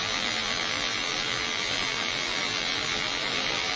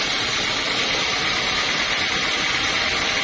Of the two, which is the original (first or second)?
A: second